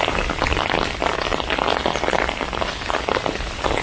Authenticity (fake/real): real